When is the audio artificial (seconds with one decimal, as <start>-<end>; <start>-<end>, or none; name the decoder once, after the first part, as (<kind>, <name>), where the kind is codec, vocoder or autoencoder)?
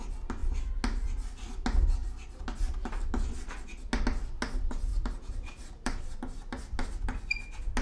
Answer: 4.9-6.0 (vocoder, BigVGAN v2)